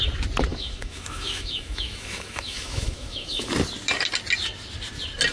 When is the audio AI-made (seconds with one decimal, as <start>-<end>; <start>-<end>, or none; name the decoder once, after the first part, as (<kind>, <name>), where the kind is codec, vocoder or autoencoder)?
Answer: 0.5-3.5 (autoencoder, DAC-VAE)